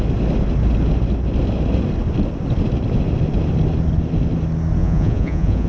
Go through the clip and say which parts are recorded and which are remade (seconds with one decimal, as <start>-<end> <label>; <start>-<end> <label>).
0.0-4.8 recorded; 4.8-5.7 remade